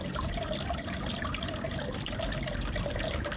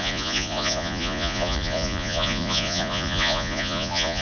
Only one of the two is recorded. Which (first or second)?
first